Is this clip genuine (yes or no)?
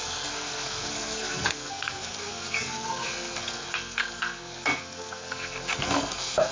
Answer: no